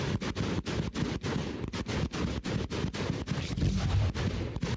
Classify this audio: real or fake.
real